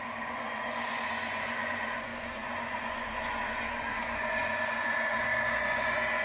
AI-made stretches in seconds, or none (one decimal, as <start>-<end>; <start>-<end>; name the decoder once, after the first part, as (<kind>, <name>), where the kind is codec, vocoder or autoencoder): 0.0-6.2 (vocoder, Vocos)